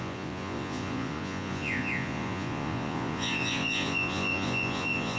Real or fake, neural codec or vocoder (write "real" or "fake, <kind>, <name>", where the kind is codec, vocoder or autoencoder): fake, vocoder, Vocos